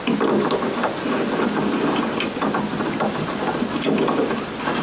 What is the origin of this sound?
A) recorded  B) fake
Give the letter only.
A